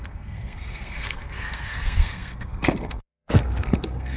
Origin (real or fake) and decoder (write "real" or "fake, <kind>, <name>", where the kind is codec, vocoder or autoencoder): fake, codec, SNAC